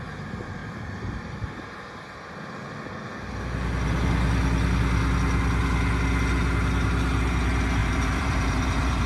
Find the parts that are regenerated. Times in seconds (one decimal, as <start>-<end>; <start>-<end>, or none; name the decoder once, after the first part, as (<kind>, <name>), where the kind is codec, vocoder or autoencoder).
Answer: 0.6-2.3 (vocoder, BigVGAN v2); 7.8-9.1